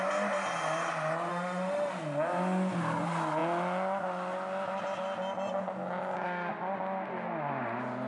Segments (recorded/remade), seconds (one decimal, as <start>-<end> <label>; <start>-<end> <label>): 0.0-1.3 recorded; 1.3-1.9 remade; 1.9-8.1 recorded